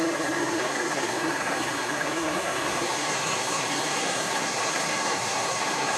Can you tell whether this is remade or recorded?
remade